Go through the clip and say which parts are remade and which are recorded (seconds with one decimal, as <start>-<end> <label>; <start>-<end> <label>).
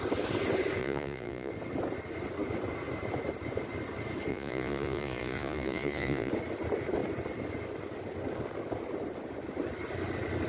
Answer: 0.0-0.8 recorded; 0.8-1.5 remade; 1.5-4.3 recorded; 4.3-6.3 remade; 6.3-10.5 recorded